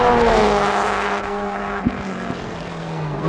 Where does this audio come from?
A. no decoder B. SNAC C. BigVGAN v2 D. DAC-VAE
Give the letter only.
B